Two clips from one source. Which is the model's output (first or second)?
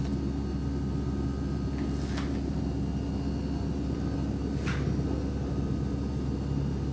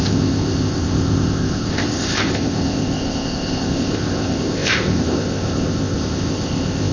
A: second